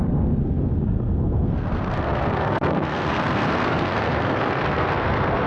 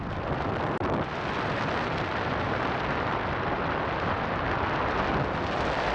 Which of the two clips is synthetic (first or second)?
first